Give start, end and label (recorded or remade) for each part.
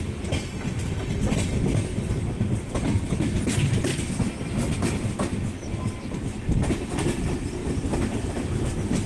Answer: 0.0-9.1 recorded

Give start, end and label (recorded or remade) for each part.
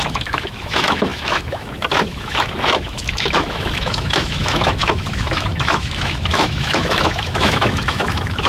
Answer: 0.0-8.5 remade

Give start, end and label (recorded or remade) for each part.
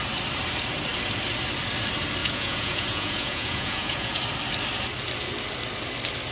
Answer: 0.0-2.2 recorded; 2.2-4.2 remade; 4.2-6.3 recorded